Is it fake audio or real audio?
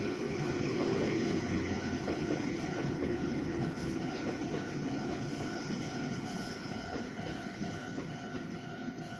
fake